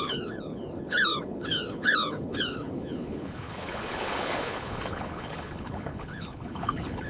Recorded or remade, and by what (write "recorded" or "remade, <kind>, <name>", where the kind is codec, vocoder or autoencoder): remade, codec, HILCodec